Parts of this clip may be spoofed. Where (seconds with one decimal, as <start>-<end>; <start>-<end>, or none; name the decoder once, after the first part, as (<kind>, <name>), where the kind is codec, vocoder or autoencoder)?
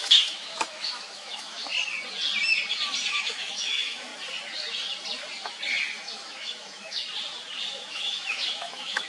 0.0-1.7 (autoencoder, DAC-VAE); 3.1-4.1; 6.0-7.0; 7.7-9.1